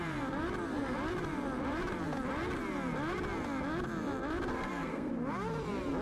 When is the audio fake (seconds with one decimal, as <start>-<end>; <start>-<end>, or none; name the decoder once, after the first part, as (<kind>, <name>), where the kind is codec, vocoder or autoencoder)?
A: 4.5-5.1 (codec, SNAC)